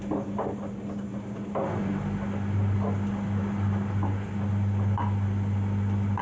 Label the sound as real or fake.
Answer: real